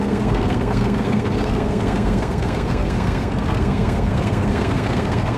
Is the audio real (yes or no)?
no